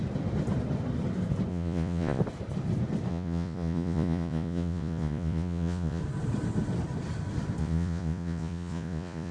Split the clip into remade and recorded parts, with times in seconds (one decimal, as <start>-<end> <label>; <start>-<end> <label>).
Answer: 0.0-1.5 recorded; 1.5-2.2 remade; 2.2-3.1 recorded; 3.1-6.0 remade; 6.0-7.6 recorded; 7.6-9.3 remade